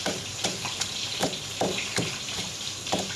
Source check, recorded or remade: remade